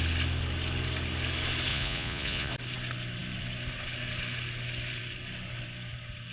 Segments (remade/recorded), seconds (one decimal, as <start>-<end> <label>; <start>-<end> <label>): 0.0-1.7 recorded; 1.7-2.5 remade; 2.5-6.3 recorded